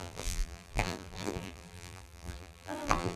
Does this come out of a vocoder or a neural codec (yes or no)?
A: yes